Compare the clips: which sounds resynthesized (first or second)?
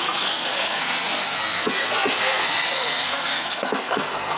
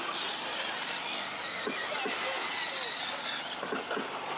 first